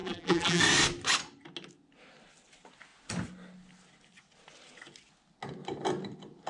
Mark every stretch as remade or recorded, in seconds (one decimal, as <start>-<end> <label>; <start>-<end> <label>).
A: 0.0-0.6 remade; 0.6-6.5 recorded